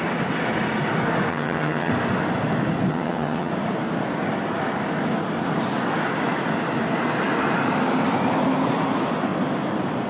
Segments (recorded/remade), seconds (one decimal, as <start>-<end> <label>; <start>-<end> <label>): 0.0-1.3 recorded; 1.3-1.9 remade; 1.9-2.9 recorded; 2.9-3.5 remade; 3.5-10.1 recorded